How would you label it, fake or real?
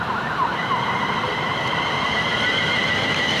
real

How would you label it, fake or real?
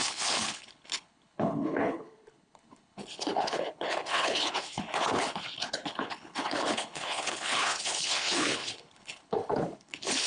fake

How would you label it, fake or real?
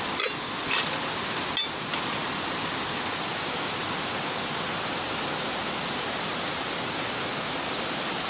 real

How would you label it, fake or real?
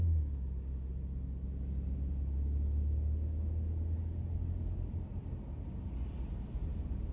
real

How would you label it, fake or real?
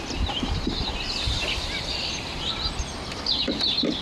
real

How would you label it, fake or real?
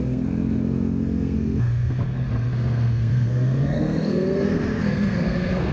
fake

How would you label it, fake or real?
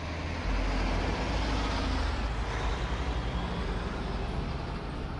real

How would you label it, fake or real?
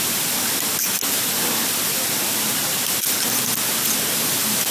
real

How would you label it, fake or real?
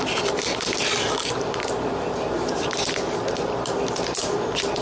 real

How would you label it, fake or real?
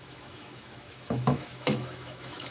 fake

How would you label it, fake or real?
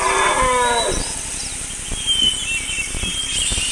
real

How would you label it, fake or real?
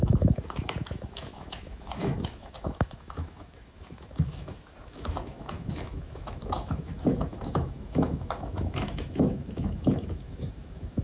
fake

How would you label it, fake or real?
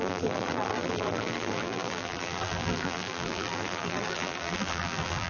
fake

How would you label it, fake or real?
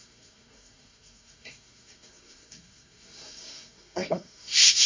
fake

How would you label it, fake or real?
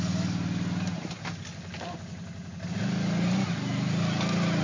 real